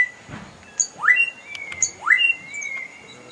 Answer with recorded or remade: recorded